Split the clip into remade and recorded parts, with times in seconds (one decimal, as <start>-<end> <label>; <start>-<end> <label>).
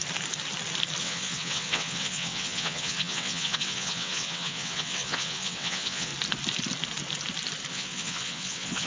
0.0-1.0 recorded; 1.0-6.1 remade; 6.1-7.7 recorded; 7.7-8.9 remade